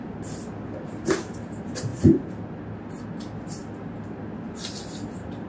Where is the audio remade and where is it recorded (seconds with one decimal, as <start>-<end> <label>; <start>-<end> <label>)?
0.0-5.5 recorded